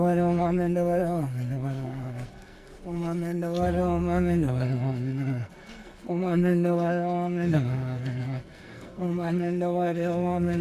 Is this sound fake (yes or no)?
yes